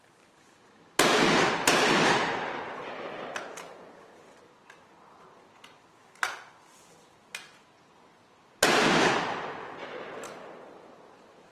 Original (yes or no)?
yes